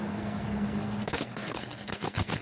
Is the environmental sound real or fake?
fake